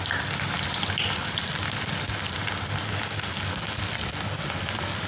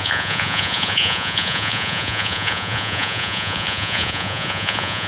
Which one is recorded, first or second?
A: first